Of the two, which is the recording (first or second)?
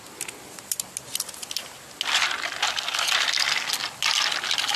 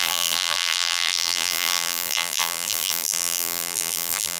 first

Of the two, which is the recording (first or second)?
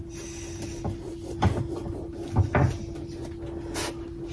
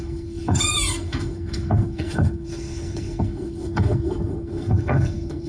first